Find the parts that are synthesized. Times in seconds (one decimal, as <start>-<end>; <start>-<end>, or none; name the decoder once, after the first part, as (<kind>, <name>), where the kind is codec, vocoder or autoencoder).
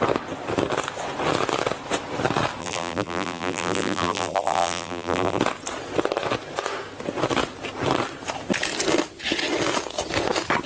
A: 2.6-5.4 (vocoder, BigVGAN v2)